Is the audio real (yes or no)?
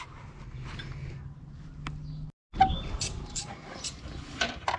yes